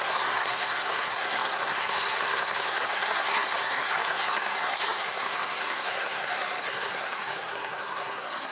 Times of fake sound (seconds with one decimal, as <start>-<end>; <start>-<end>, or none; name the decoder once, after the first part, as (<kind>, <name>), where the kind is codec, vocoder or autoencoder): 0.0-8.5 (codec, SNAC)